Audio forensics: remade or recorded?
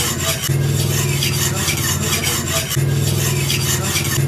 recorded